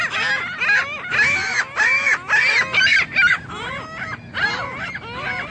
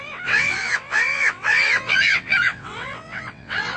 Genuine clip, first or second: first